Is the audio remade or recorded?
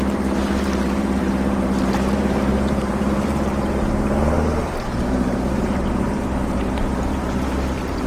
remade